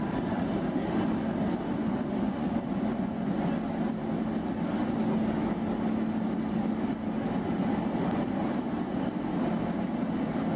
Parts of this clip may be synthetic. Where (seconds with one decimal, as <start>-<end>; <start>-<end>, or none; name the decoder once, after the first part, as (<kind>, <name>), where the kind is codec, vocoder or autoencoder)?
1.8-3.5 (vocoder, Vocos)